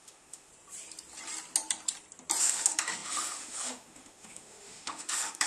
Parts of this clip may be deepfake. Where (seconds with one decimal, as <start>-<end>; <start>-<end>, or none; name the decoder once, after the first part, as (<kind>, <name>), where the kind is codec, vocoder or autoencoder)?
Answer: 0.0-0.5 (autoencoder, DAC-VAE); 2.4-5.5

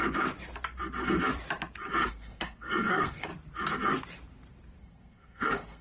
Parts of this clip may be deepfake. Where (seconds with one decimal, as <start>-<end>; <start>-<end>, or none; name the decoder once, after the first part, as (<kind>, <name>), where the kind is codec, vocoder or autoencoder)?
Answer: 2.1-3.3 (codec, SNAC); 4.8-5.8

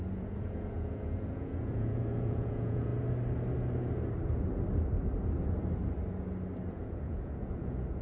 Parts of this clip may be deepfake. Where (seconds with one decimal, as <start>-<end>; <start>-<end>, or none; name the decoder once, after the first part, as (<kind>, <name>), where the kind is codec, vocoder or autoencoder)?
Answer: 0.0-2.9 (vocoder, Vocos); 6.7-8.0

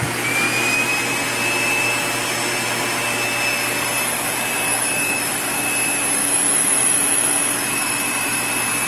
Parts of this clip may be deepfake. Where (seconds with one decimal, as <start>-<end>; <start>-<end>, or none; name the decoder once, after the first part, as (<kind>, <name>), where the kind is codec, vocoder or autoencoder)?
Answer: 4.7-5.6 (autoencoder, DAC-VAE); 6.2-8.5

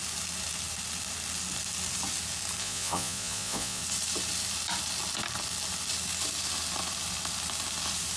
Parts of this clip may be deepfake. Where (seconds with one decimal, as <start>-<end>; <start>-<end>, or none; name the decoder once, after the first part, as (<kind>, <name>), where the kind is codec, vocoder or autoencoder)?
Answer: 2.6-3.8 (vocoder, Vocos)